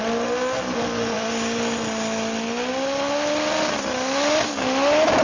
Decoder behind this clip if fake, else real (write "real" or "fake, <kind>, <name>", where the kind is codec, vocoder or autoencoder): real